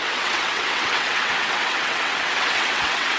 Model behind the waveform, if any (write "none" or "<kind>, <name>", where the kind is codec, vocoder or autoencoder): vocoder, WaveNeXt